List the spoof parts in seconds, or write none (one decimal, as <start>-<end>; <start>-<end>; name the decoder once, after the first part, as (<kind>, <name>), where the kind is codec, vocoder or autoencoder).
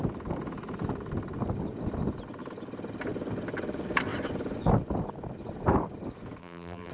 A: 6.4-6.9 (vocoder, BigVGAN v2)